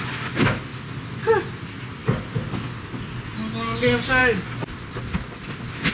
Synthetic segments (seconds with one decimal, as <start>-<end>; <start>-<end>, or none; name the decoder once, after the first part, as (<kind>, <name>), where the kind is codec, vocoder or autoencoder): none